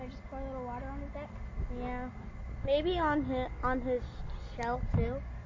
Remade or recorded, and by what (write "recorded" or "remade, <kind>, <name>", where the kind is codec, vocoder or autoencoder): recorded